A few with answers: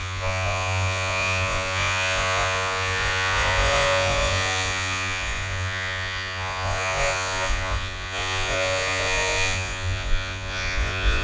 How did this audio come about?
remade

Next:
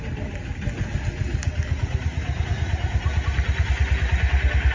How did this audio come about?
recorded